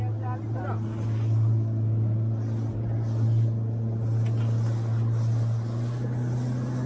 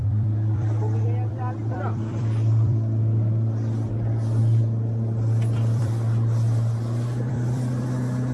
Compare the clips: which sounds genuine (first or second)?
first